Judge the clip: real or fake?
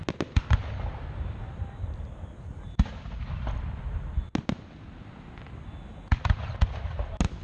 real